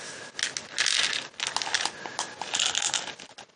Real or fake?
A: real